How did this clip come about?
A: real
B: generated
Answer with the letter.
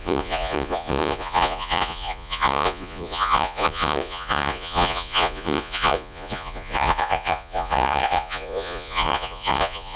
B